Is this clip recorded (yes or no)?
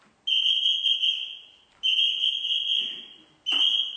yes